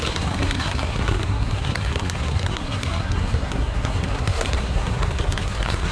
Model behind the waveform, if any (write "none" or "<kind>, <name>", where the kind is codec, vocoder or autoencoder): codec, SNAC